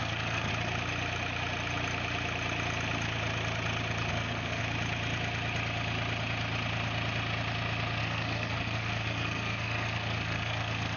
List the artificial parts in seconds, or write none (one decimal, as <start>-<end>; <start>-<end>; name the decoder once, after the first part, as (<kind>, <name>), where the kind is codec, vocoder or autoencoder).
0.0-0.5 (codec, SNAC); 4.1-4.6; 8.0-11.0